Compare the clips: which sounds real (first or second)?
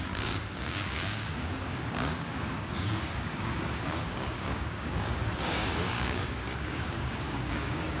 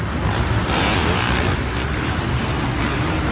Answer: second